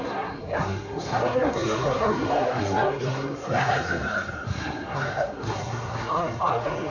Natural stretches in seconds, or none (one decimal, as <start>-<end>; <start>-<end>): none